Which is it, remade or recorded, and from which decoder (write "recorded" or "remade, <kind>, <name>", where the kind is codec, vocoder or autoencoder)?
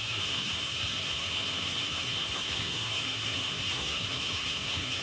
remade, codec, SNAC